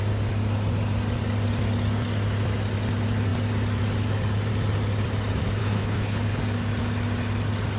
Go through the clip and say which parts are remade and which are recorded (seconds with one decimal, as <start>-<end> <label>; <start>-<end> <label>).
0.0-5.6 recorded; 5.6-6.4 remade; 6.4-7.8 recorded

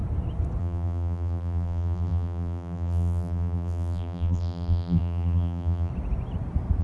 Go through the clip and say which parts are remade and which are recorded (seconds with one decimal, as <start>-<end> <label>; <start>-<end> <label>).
0.0-0.6 recorded; 0.6-5.9 remade; 5.9-6.8 recorded

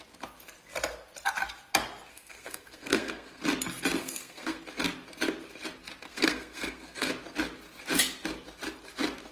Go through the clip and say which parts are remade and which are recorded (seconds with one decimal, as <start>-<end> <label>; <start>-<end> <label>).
0.0-2.1 recorded; 2.1-3.4 remade; 3.4-4.0 recorded; 4.0-4.6 remade; 4.6-6.1 recorded; 6.1-7.1 remade; 7.1-9.3 recorded

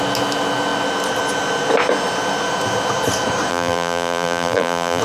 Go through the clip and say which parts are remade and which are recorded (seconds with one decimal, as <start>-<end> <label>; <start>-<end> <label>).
0.0-3.5 recorded; 3.5-5.0 remade

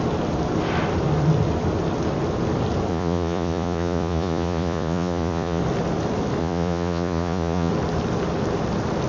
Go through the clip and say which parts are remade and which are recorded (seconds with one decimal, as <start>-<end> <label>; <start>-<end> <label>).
0.0-2.9 recorded; 2.9-5.6 remade; 5.6-6.4 recorded; 6.4-7.7 remade; 7.7-9.1 recorded

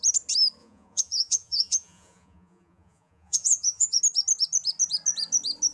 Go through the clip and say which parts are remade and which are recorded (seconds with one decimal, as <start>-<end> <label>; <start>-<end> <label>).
0.0-0.6 recorded; 0.6-4.0 remade; 4.0-5.7 recorded

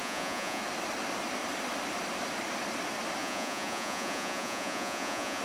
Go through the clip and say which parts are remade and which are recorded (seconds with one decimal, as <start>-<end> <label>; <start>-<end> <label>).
0.0-0.6 remade; 0.6-3.2 recorded; 3.2-5.4 remade